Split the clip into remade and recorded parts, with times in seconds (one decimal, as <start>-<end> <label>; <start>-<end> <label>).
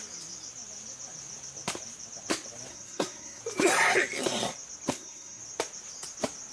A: 0.0-2.7 recorded; 2.7-3.4 remade; 3.4-4.9 recorded; 4.9-5.4 remade; 5.4-6.5 recorded